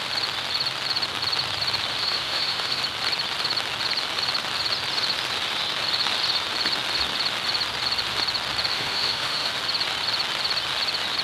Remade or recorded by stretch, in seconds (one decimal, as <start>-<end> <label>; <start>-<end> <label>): 0.0-2.0 recorded; 2.0-2.8 remade; 2.8-8.7 recorded; 8.7-9.5 remade; 9.5-11.2 recorded